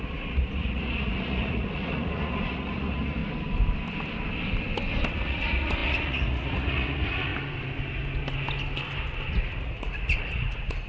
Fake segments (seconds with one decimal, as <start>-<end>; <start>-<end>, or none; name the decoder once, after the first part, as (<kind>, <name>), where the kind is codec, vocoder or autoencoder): 0.0-3.2 (vocoder, Vocos); 5.1-7.3; 9.3-10.9